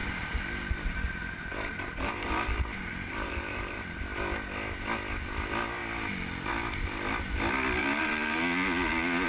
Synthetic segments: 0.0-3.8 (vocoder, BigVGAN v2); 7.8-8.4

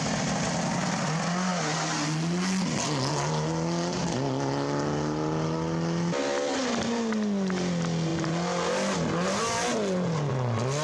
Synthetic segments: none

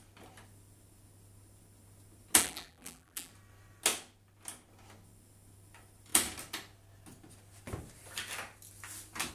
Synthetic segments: 2.4-3.3 (vocoder, BigVGAN v2)

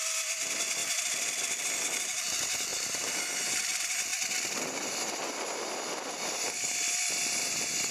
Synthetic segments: 2.7-3.2 (vocoder, BigVGAN v2)

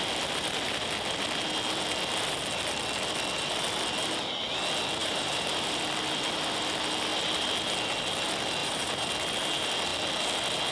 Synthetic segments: 5.0-5.8 (vocoder, BigVGAN v2); 8.6-9.1

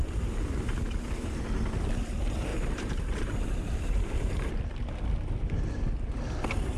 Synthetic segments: 2.5-4.5 (vocoder, BigVGAN v2)